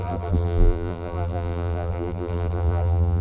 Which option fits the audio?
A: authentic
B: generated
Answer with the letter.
B